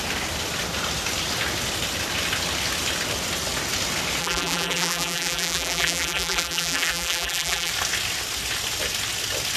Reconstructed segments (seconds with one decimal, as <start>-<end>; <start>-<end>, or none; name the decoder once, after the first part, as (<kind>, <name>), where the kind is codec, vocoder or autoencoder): 4.2-7.7 (vocoder, BigVGAN v2)